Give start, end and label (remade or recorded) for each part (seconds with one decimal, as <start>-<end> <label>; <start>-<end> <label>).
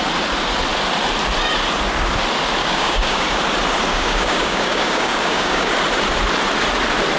0.0-2.6 recorded; 2.6-3.4 remade; 3.4-3.9 recorded; 3.9-5.7 remade; 5.7-7.2 recorded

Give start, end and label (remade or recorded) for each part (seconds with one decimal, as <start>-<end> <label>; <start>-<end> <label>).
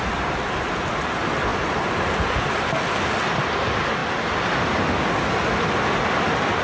0.0-6.6 recorded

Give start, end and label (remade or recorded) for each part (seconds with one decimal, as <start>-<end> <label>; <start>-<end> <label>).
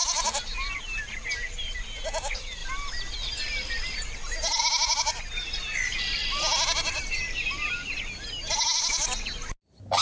0.0-10.0 recorded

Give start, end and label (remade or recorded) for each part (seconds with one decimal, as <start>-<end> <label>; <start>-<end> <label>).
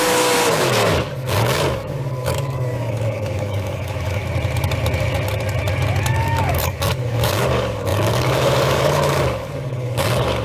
0.0-4.2 remade; 4.2-6.0 recorded; 6.0-10.4 remade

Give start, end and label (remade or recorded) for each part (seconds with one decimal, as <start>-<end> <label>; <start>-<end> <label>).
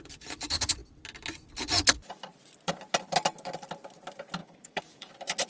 0.0-4.4 recorded; 4.4-5.1 remade; 5.1-5.5 recorded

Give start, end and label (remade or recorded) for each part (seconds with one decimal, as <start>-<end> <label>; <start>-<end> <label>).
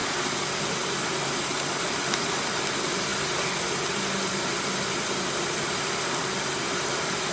0.0-7.3 recorded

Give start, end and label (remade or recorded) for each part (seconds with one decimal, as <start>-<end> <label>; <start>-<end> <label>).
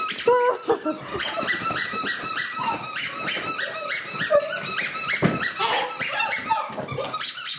0.0-7.6 recorded